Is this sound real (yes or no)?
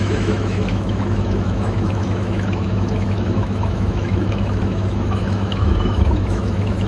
no